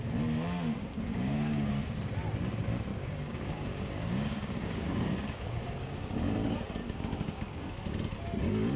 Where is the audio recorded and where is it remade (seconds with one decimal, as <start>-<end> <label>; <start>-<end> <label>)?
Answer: 0.0-0.8 recorded; 0.8-1.7 remade; 1.7-2.9 recorded; 2.9-6.1 remade; 6.1-6.8 recorded; 6.8-7.6 remade; 7.6-8.8 recorded